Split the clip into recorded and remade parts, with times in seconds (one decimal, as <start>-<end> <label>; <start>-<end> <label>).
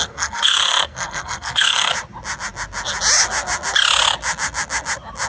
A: 0.0-1.9 remade; 1.9-5.3 recorded